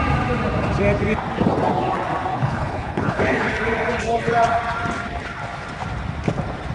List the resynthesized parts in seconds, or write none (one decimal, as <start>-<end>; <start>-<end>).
2.3-3.5